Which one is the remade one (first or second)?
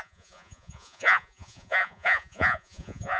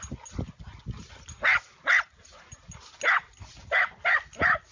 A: first